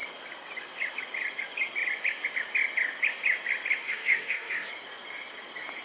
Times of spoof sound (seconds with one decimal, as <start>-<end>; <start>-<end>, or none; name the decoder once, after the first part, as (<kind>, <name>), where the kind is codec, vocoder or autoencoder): 3.8-4.7 (codec, DAC)